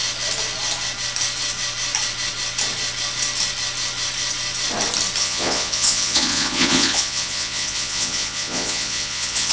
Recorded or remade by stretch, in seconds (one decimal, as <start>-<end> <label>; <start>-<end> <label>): 0.0-5.2 recorded; 5.2-9.5 remade